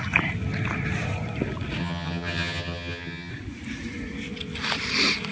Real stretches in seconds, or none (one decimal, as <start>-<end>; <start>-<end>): 0.0-1.8; 3.3-5.3